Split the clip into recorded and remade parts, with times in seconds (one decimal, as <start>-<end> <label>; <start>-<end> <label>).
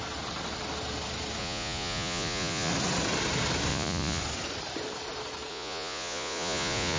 0.0-1.4 recorded; 1.4-2.7 remade; 2.7-3.7 recorded; 3.7-4.2 remade; 4.2-5.5 recorded; 5.5-7.0 remade